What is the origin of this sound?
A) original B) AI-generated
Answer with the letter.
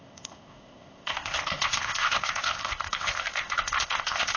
B